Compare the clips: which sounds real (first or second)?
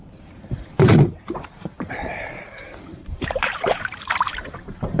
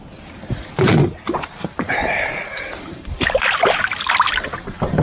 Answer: second